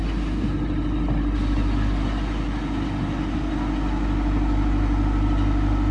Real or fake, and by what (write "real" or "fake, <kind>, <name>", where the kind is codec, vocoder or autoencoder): real